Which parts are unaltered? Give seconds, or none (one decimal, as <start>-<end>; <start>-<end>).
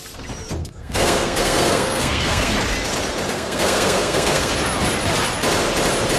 0.0-0.6; 2.5-3.3; 4.5-6.2